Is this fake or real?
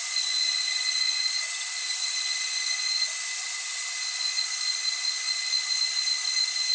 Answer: fake